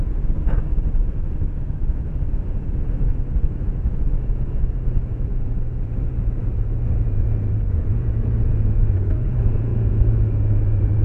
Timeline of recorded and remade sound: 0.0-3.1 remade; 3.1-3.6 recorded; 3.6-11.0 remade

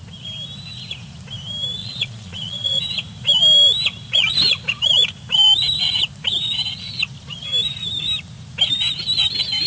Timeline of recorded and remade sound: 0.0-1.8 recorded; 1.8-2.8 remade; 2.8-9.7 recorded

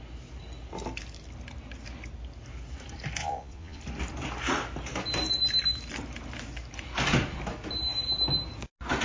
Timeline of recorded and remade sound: 0.0-3.2 recorded; 3.2-3.8 remade; 3.8-9.0 recorded

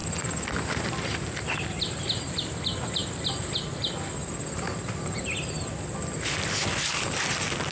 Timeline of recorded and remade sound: 0.0-7.7 recorded